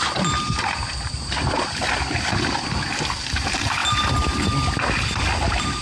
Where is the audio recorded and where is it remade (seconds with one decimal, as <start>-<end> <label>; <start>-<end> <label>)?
0.0-5.8 recorded